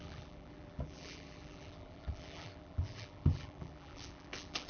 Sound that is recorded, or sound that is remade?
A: remade